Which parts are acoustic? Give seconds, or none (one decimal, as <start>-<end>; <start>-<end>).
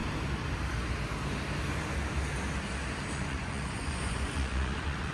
0.0-3.1